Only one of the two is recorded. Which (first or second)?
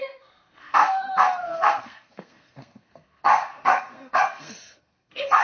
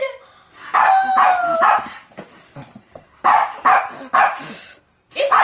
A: second